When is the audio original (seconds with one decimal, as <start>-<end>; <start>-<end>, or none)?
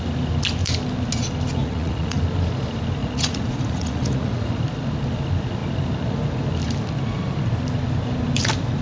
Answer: 0.0-1.6; 2.2-3.0; 4.5-8.8